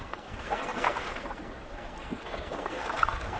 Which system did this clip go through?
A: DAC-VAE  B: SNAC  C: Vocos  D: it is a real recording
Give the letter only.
B